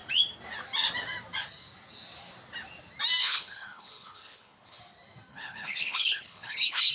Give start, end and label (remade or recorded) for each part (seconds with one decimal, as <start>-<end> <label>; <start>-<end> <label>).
0.0-3.2 recorded; 3.2-4.8 remade; 4.8-5.3 recorded; 5.3-6.9 remade